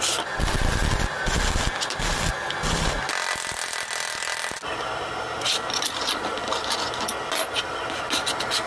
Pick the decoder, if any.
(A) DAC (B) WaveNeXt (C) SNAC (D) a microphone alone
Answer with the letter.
D